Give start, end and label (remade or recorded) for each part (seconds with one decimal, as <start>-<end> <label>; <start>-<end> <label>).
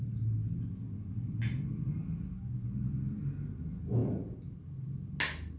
0.0-4.0 recorded; 4.0-5.1 remade; 5.1-5.6 recorded